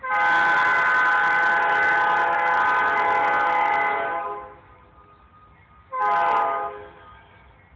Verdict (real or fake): real